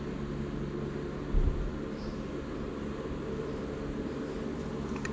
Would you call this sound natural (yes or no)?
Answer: yes